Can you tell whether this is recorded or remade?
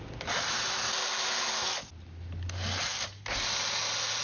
recorded